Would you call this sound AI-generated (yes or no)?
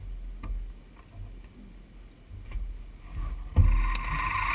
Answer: no